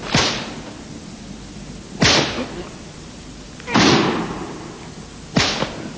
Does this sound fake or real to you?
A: real